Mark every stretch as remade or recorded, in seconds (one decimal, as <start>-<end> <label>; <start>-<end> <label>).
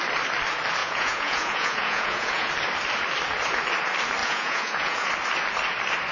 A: 0.0-0.8 recorded; 0.8-2.5 remade; 2.5-4.2 recorded; 4.2-5.1 remade; 5.1-6.1 recorded